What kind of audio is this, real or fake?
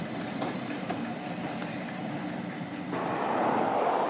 real